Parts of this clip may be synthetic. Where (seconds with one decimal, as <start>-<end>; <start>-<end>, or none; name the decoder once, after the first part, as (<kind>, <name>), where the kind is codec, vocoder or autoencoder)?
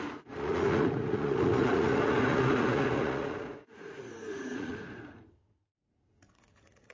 0.0-6.9 (vocoder, Vocos)